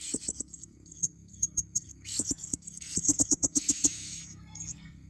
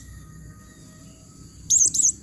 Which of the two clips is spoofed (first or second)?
first